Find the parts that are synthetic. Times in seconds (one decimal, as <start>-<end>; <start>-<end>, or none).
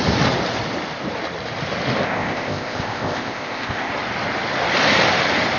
2.0-3.9